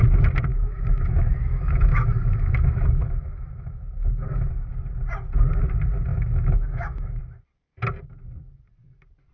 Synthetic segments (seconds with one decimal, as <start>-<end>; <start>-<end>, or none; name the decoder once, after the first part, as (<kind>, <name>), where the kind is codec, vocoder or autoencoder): 0.5-4.5 (autoencoder, DAC-VAE); 6.1-7.2